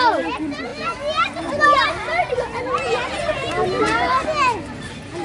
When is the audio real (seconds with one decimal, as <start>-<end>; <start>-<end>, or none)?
0.0-5.2